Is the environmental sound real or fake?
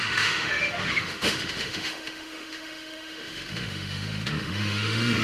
fake